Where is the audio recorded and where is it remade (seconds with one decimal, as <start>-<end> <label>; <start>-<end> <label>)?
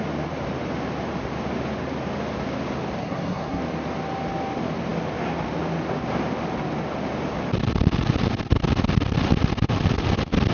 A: 0.0-3.0 recorded; 3.0-3.6 remade; 3.6-10.5 recorded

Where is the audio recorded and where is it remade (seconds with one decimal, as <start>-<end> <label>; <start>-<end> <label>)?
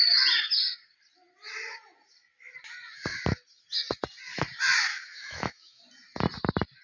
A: 0.0-4.9 recorded; 4.9-5.8 remade; 5.8-6.8 recorded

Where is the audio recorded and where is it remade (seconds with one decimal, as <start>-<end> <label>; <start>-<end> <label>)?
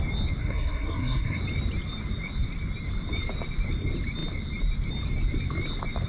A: 0.0-0.4 recorded; 0.4-1.4 remade; 1.4-6.1 recorded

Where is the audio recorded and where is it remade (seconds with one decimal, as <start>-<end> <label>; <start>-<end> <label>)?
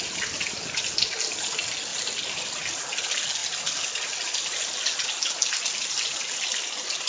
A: 0.0-7.1 recorded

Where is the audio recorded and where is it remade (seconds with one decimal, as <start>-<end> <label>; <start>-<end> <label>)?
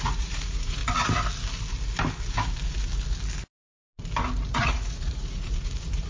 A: 0.0-0.8 remade; 0.8-4.5 recorded; 4.5-6.1 remade